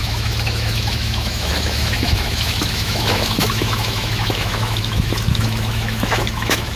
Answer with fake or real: fake